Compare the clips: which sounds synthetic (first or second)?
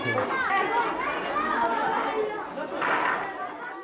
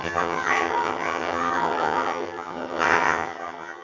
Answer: second